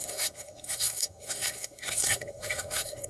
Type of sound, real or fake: fake